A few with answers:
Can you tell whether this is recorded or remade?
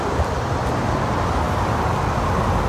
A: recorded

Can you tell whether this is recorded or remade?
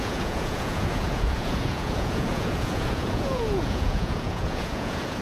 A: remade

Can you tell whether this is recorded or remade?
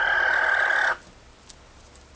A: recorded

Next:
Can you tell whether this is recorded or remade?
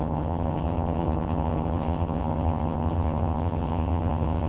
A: remade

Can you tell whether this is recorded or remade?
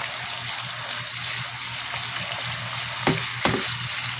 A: recorded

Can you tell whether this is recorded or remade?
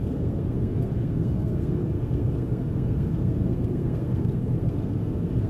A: remade